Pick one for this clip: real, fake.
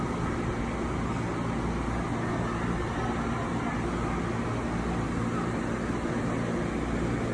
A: real